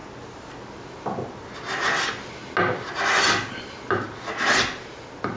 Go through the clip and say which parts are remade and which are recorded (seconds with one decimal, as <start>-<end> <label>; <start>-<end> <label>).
0.0-5.4 recorded